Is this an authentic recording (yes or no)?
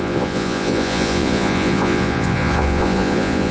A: no